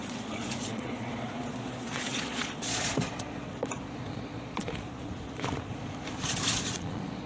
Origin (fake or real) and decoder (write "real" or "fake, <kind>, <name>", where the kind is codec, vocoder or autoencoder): fake, vocoder, Vocos